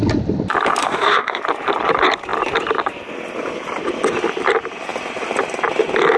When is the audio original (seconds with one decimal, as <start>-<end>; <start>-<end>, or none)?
0.0-0.8; 1.4-6.2